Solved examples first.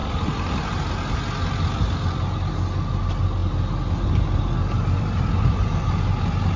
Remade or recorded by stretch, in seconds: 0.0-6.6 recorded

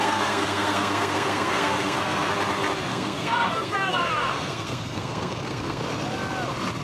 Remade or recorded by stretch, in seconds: 0.0-2.3 remade; 2.3-2.9 recorded; 2.9-5.8 remade; 5.8-6.8 recorded